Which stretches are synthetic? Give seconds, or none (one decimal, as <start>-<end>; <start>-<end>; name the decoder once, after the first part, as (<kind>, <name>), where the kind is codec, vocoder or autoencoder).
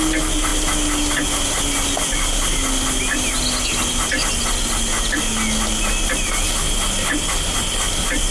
none